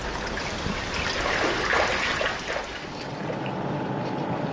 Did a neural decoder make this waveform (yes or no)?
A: no